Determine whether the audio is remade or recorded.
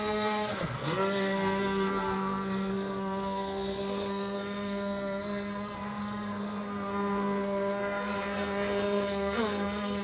remade